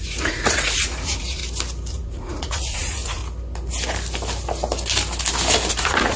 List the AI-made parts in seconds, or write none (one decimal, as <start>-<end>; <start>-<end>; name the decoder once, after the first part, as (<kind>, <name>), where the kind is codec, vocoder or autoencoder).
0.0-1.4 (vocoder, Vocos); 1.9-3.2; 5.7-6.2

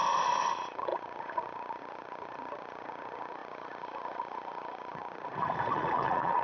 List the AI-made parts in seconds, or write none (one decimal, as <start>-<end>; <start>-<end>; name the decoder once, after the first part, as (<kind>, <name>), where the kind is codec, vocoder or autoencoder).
0.5-6.4 (vocoder, Vocos)

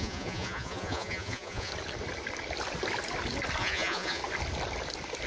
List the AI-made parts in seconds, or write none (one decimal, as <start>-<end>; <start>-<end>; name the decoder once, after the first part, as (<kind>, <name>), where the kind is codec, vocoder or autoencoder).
0.0-1.7 (vocoder, Vocos); 3.6-4.2

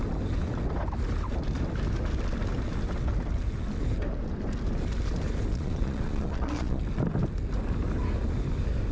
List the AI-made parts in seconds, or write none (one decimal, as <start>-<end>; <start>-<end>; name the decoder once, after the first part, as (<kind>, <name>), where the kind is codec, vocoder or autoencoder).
5.5-6.8 (vocoder, Vocos)

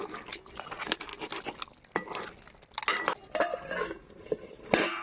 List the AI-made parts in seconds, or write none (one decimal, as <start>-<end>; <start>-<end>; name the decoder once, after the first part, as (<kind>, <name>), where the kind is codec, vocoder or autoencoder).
none

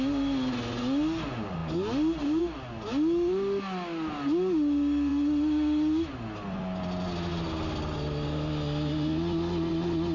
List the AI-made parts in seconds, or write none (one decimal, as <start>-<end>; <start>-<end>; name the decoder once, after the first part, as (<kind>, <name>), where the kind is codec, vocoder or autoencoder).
none

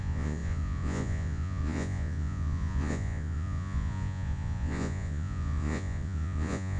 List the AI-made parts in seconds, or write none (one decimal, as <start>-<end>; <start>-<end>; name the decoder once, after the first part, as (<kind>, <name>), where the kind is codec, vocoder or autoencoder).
0.0-6.8 (vocoder, Vocos)

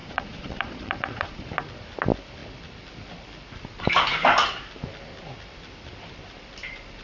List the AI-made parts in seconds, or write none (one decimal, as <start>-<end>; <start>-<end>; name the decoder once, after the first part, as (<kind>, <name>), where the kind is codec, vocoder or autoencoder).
0.0-1.5 (vocoder, Vocos)